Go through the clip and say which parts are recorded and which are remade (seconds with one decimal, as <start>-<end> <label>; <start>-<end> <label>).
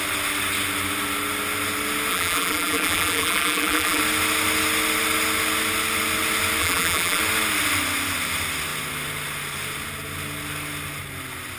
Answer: 0.0-2.1 recorded; 2.1-4.0 remade; 4.0-6.6 recorded; 6.6-7.2 remade; 7.2-11.6 recorded